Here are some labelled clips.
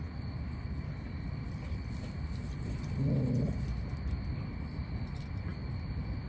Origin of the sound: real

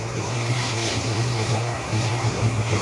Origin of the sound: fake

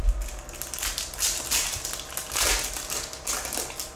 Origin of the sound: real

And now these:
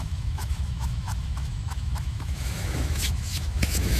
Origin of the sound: fake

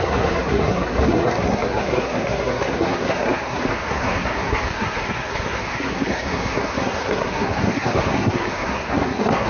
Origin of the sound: fake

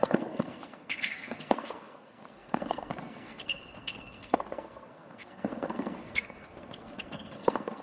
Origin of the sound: fake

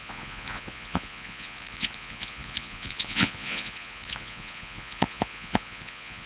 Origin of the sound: fake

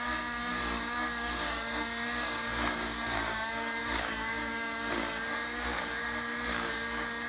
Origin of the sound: fake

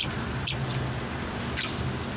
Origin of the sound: real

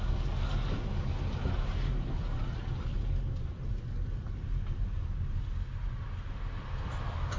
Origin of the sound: real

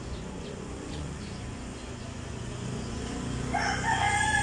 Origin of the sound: fake